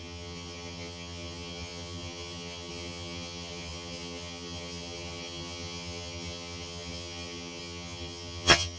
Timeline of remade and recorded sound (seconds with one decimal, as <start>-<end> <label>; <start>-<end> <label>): 0.0-8.8 remade